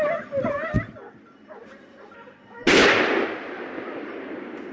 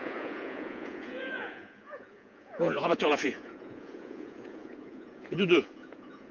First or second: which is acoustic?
first